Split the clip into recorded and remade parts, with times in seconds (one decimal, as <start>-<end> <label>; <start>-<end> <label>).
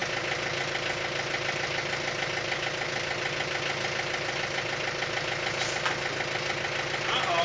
0.0-7.4 recorded